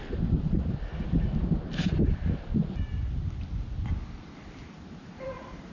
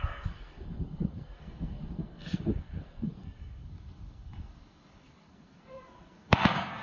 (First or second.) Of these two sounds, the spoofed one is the second